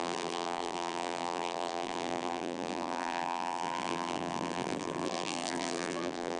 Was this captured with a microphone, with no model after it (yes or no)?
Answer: no